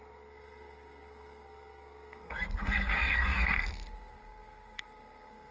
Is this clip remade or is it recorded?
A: remade